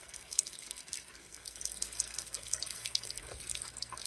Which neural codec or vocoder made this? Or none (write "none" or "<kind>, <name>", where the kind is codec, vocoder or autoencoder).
codec, SNAC